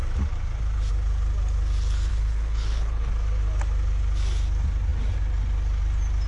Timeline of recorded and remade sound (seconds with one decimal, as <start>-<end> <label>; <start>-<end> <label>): 0.0-2.1 recorded; 2.1-3.1 remade; 3.1-6.3 recorded

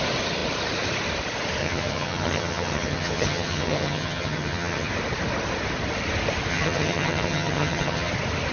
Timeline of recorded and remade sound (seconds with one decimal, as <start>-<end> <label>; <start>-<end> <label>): 0.0-1.6 recorded; 1.6-4.9 remade; 4.9-6.5 recorded; 6.5-8.1 remade; 8.1-8.5 recorded